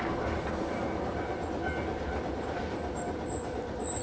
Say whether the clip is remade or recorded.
recorded